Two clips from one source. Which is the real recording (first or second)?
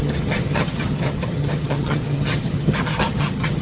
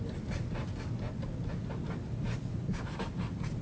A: second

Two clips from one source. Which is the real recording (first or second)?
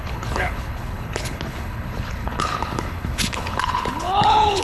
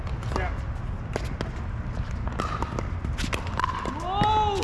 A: second